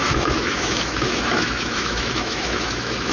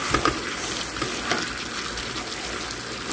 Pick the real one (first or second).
second